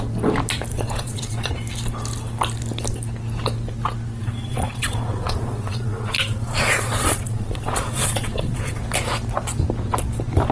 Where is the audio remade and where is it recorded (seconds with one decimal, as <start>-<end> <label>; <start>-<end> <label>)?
0.0-0.7 recorded; 0.7-1.5 remade; 1.5-4.2 recorded; 4.2-8.8 remade; 8.8-10.5 recorded